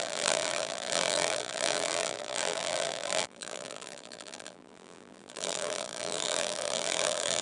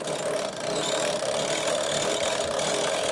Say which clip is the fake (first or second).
first